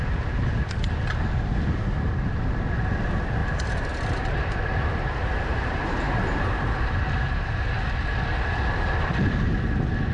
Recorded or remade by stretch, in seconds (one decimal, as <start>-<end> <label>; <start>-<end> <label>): 0.0-3.4 recorded; 3.4-7.6 remade; 7.6-10.1 recorded